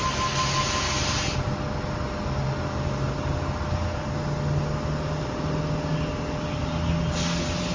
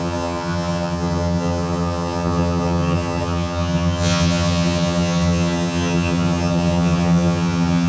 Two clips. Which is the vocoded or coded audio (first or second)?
second